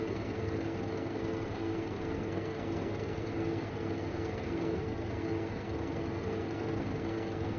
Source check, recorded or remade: remade